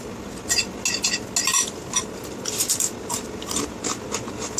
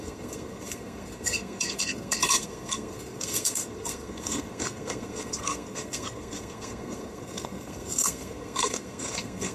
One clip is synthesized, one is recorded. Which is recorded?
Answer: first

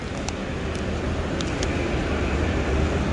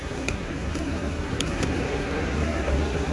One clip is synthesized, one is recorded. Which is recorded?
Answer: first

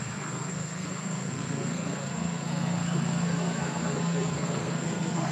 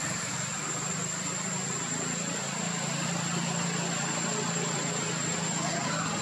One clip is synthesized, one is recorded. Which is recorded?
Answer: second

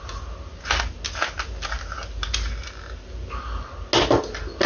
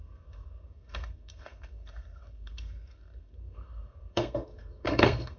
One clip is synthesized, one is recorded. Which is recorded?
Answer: first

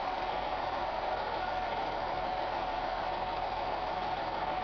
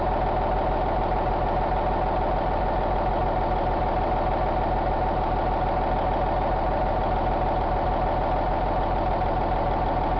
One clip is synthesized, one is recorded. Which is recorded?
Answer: second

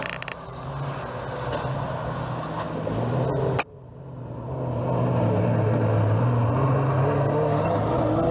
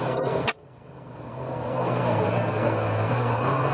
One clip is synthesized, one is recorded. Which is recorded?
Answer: first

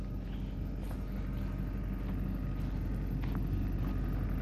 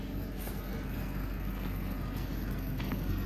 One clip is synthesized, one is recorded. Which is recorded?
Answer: first